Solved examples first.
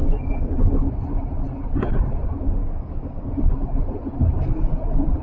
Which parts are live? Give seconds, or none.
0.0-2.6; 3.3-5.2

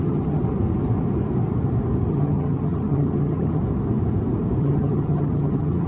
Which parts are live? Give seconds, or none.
0.4-2.1; 3.6-4.6

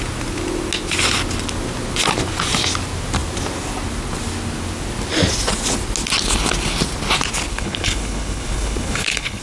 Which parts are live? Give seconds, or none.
0.0-7.5